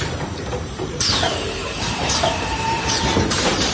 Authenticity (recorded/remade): remade